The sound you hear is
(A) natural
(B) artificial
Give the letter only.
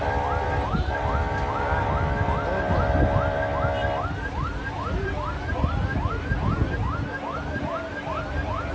A